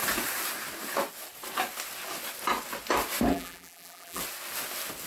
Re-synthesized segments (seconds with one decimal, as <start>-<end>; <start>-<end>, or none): 3.3-4.2

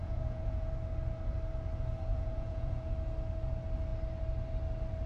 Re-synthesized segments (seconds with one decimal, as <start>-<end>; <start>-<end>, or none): 0.0-0.7; 2.1-2.9